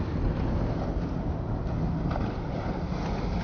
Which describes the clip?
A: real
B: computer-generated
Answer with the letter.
A